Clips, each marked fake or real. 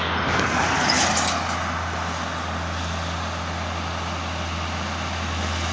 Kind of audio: real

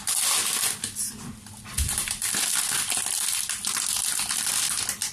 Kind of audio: real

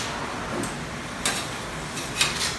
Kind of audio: real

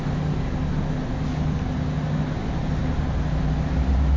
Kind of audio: real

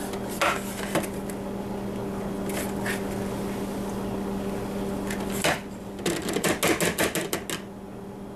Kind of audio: real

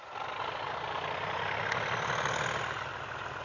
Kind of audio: real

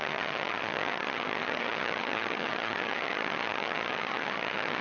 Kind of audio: fake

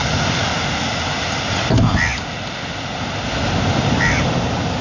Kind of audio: real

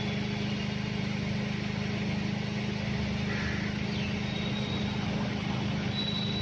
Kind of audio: real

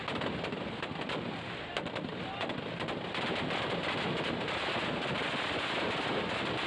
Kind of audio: real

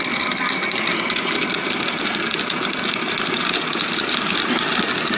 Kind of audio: real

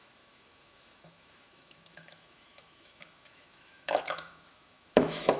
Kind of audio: fake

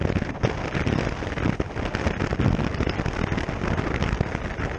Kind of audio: real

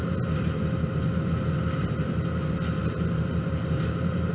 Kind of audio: fake